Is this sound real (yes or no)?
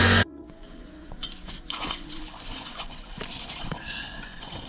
no